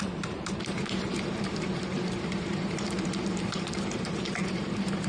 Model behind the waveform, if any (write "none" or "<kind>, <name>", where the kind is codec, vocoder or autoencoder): vocoder, BigVGAN v2